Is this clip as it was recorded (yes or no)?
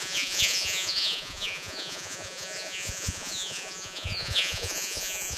no